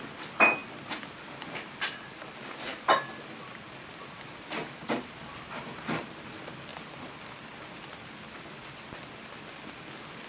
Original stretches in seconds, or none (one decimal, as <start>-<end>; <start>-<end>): 0.0-10.3